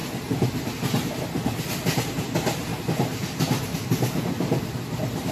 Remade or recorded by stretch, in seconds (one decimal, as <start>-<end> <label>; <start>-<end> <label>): 0.0-5.3 recorded